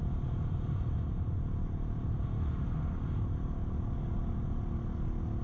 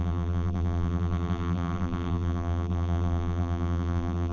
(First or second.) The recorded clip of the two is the first